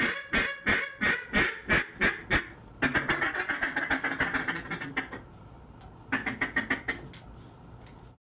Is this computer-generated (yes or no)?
no